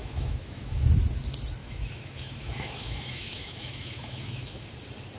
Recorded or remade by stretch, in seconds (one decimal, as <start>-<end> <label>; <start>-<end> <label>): 0.0-0.8 remade; 0.8-1.6 recorded; 1.6-4.7 remade; 4.7-5.2 recorded